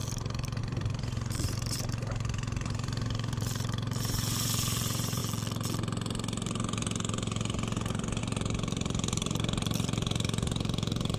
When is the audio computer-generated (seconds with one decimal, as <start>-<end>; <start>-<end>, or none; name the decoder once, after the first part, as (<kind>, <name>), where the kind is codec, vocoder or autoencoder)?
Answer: 0.0-5.2 (vocoder, BigVGAN v2); 8.2-11.2